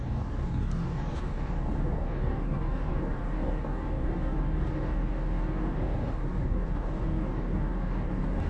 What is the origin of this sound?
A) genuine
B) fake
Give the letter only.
B